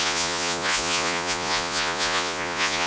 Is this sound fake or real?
fake